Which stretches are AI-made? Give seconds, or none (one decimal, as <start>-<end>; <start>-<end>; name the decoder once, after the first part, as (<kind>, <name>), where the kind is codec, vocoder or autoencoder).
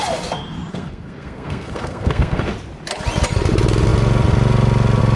0.7-2.5 (codec, SNAC)